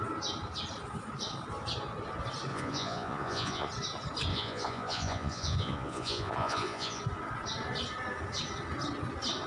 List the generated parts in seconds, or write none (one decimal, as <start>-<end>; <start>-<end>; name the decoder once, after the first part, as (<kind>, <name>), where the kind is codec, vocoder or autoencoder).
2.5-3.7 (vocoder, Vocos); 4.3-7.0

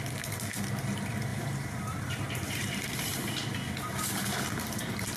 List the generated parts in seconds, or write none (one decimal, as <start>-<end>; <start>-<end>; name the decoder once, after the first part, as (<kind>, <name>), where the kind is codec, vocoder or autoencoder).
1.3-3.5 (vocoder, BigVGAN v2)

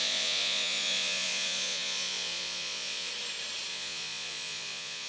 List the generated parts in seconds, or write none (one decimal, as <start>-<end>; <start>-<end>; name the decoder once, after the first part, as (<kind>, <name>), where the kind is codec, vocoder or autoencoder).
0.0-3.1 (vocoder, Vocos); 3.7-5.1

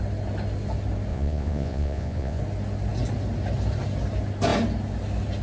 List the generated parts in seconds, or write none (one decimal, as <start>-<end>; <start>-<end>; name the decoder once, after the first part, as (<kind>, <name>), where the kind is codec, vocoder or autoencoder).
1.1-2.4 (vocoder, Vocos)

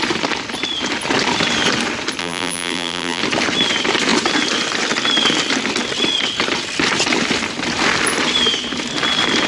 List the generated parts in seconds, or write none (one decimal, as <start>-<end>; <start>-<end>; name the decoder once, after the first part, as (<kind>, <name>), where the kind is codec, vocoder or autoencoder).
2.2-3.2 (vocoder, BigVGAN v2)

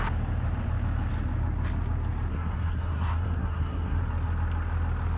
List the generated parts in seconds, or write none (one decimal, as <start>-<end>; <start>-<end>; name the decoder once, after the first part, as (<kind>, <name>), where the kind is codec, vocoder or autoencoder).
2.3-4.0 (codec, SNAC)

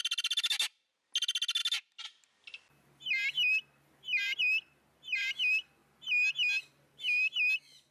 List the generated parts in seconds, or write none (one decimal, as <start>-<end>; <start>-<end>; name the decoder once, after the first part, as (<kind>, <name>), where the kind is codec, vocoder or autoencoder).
none

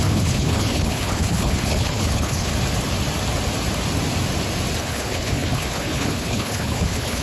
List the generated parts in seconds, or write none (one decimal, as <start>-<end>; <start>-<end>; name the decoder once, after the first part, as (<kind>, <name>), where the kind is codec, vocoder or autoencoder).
0.0-2.5 (codec, HILCodec); 4.8-7.2